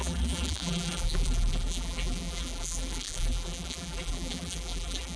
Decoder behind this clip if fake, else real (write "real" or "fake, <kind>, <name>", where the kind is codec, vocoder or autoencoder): fake, vocoder, BigVGAN v2